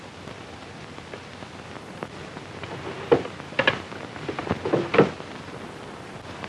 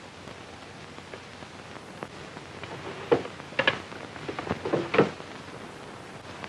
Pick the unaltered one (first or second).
second